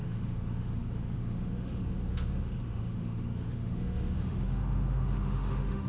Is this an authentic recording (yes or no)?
no